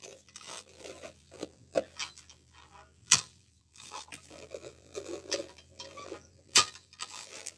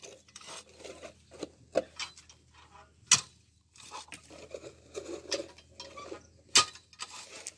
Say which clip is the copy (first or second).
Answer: first